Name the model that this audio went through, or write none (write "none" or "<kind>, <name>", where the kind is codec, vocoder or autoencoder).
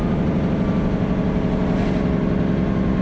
none